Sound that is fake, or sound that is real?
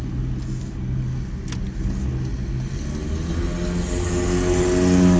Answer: real